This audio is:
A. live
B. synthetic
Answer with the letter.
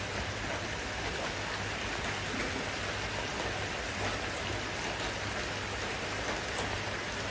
A